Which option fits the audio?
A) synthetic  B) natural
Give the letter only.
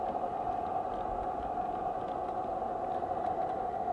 B